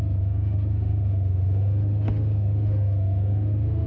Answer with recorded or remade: remade